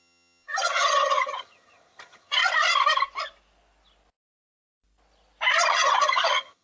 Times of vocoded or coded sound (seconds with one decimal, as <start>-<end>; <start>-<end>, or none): 0.0-2.4; 5.7-6.6